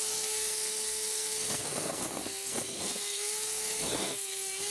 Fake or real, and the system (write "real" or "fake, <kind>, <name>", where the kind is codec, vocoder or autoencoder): fake, codec, SNAC